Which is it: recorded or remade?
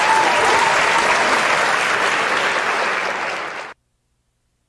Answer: recorded